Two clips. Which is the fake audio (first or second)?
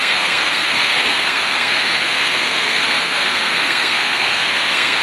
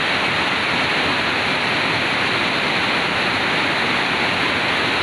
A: first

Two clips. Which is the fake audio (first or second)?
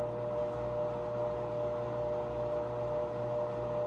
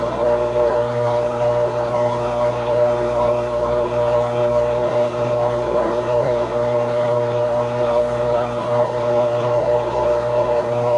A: second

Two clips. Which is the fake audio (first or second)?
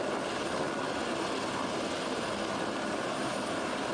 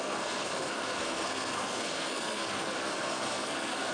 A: second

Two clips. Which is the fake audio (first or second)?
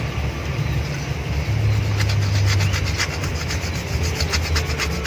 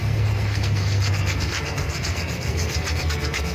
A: second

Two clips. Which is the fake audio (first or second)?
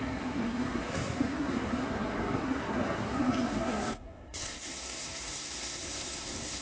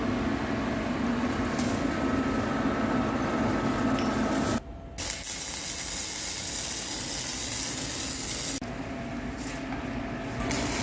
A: first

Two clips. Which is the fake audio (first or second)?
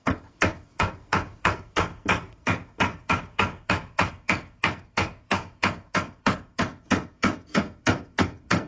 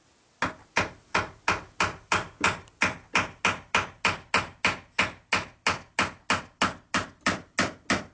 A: first